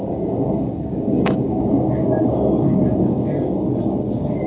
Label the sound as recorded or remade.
remade